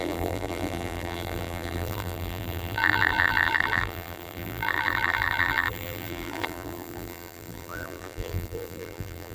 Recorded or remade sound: remade